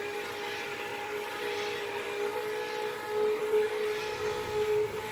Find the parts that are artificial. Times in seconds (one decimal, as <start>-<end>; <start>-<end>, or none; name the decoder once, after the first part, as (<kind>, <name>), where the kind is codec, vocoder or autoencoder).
0.9-1.4 (vocoder, BigVGAN v2)